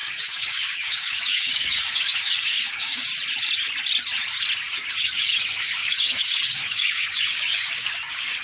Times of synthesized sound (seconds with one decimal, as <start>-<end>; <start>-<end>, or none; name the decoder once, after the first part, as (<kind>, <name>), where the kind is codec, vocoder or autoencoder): 0.0-3.1 (codec, DAC); 4.9-8.4

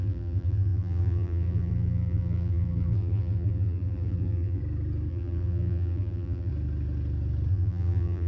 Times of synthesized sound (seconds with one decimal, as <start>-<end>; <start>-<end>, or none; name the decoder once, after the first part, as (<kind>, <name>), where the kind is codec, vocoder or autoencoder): 0.0-4.6 (vocoder, BigVGAN v2); 5.1-6.5; 7.5-8.3

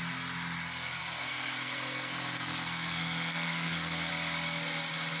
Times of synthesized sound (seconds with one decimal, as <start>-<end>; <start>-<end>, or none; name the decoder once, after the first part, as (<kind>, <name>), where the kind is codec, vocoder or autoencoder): 1.0-4.1 (codec, SNAC)

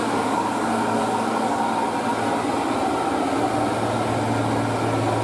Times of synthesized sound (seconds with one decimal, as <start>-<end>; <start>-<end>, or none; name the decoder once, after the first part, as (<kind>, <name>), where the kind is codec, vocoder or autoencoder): 0.0-1.6 (codec, DAC)

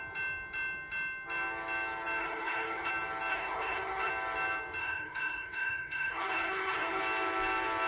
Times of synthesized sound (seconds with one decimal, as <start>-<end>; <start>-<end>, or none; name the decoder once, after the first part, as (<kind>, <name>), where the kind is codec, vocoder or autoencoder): 2.2-2.9 (codec, HILCodec); 3.3-4.1; 4.8-7.0

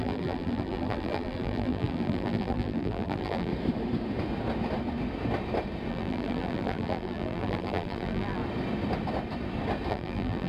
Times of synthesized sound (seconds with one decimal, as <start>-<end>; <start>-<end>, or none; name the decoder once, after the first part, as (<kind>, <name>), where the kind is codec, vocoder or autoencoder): 0.0-3.5 (vocoder, BigVGAN v2); 5.9-8.4; 9.9-10.5